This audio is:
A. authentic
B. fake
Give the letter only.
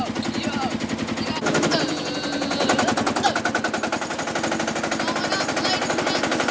A